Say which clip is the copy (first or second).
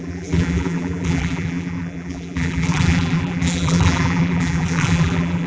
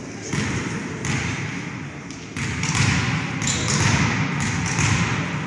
first